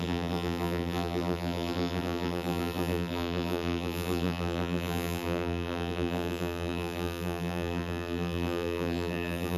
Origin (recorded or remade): remade